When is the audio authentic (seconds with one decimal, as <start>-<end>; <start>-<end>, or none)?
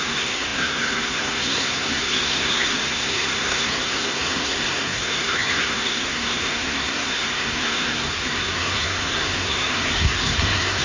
none